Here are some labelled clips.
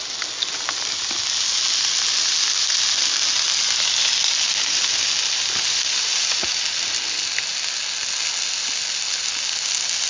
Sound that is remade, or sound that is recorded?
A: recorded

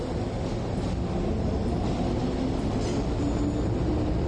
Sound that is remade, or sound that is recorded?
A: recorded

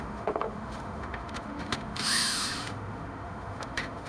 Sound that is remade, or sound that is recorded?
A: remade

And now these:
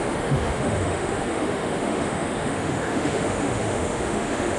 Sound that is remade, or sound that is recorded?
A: remade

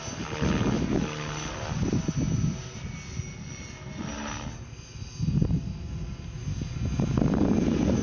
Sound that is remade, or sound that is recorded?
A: recorded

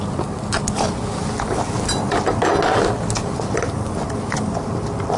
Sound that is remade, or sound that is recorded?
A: recorded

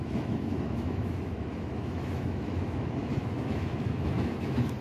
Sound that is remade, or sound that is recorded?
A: remade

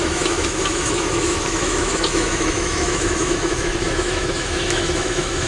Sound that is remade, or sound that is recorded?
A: remade